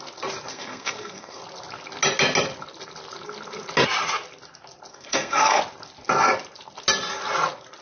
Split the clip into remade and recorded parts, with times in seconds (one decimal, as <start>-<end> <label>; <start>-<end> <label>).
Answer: 0.0-0.5 recorded; 0.5-1.4 remade; 1.4-4.9 recorded; 4.9-5.6 remade; 5.6-7.8 recorded

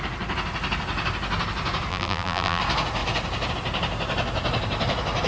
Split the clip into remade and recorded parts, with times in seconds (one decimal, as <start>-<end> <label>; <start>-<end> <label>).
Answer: 0.0-1.9 recorded; 1.9-2.6 remade; 2.6-5.3 recorded

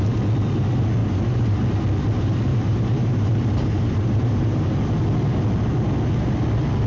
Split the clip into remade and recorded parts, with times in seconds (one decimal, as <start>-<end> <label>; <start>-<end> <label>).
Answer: 0.0-1.0 recorded; 1.0-1.6 remade; 1.6-2.5 recorded; 2.5-4.8 remade; 4.8-6.9 recorded